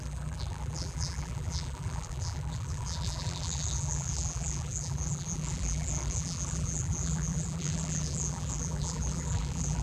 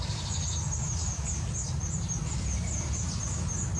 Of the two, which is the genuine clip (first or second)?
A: second